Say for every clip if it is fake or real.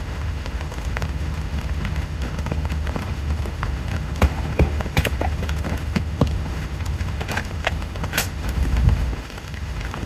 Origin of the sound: fake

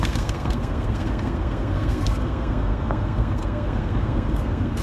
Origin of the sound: fake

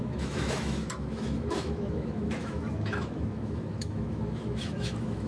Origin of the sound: fake